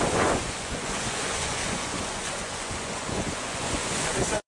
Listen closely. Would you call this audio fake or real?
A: fake